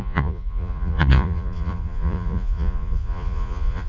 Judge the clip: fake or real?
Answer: fake